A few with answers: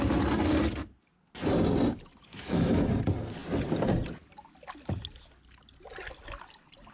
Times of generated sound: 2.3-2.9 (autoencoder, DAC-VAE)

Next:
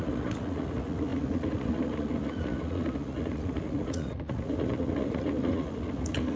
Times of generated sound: 0.0-6.4 (vocoder, Vocos)

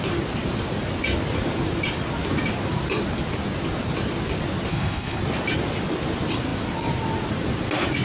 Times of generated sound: 4.7-5.2 (codec, HILCodec)

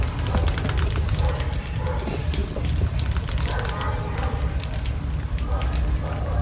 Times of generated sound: none

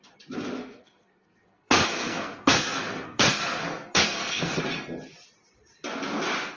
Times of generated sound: 0.6-4.6 (codec, SNAC)

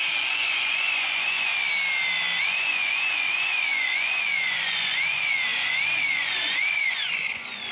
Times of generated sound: 0.0-1.5 (vocoder, Vocos); 2.4-7.7

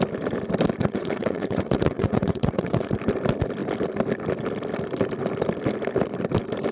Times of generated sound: 0.8-2.9 (vocoder, Vocos)

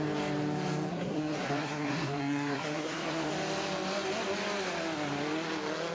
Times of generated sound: 0.9-3.3 (codec, SNAC)